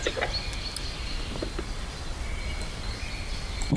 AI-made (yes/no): no